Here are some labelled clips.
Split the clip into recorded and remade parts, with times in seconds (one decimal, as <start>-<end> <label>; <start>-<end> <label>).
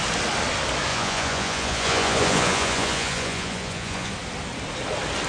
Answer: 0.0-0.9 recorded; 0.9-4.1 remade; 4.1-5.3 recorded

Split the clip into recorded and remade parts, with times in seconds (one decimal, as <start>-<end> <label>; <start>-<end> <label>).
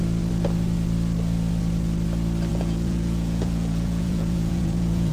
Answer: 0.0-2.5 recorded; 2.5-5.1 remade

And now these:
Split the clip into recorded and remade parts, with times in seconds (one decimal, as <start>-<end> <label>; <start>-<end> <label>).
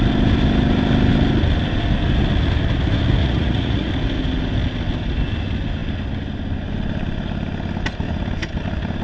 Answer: 0.0-3.2 recorded; 3.2-3.9 remade; 3.9-9.0 recorded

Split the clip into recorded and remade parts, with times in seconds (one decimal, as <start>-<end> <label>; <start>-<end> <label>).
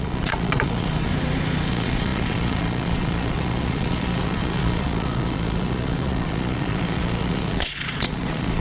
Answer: 0.0-1.1 remade; 1.1-1.7 recorded; 1.7-8.6 remade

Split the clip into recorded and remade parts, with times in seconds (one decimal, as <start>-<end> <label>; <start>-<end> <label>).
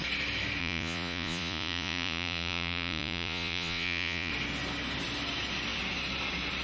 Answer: 0.0-0.6 recorded; 0.6-4.3 remade; 4.3-6.6 recorded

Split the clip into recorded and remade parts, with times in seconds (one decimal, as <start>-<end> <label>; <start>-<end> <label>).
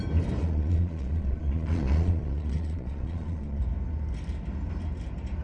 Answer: 0.0-0.4 recorded; 0.4-3.6 remade; 3.6-5.4 recorded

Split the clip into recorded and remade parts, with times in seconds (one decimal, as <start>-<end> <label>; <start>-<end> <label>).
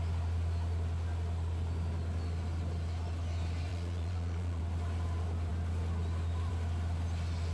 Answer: 0.0-3.7 recorded; 3.7-4.6 remade; 4.6-7.5 recorded